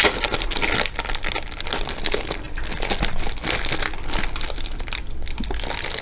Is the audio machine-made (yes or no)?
no